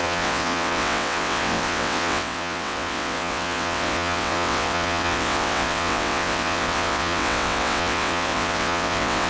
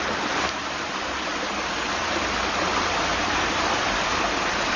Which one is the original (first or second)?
second